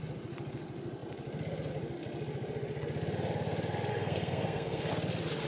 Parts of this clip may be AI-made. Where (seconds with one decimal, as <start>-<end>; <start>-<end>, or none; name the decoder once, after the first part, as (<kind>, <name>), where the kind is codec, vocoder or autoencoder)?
3.9-4.9 (codec, SNAC)